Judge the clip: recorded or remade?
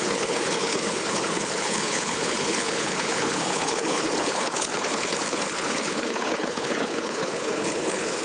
remade